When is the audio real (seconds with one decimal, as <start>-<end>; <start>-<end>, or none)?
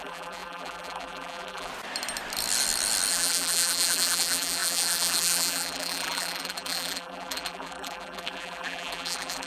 1.7-3.1